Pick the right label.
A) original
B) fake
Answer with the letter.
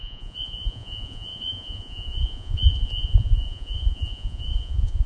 B